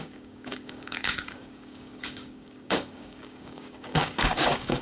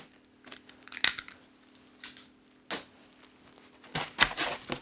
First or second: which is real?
second